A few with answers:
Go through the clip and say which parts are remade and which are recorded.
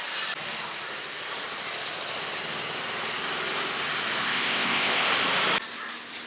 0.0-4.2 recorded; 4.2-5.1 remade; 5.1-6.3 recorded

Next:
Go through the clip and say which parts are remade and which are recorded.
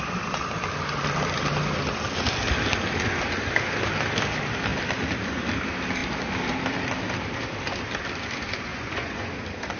0.0-8.7 recorded; 8.7-9.3 remade; 9.3-9.8 recorded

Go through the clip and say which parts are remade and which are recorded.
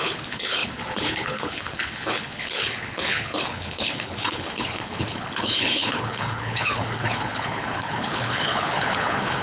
0.0-9.4 remade